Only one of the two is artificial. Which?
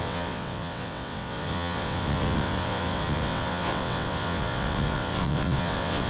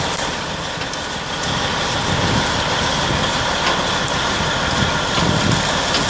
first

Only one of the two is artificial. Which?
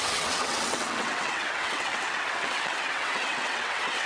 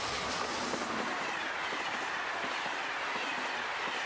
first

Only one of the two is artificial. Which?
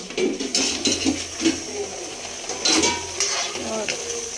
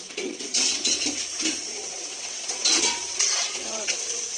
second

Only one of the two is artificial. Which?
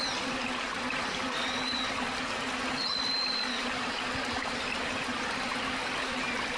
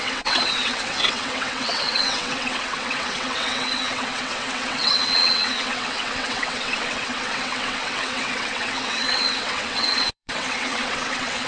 second